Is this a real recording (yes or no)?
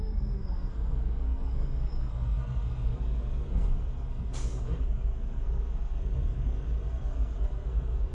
no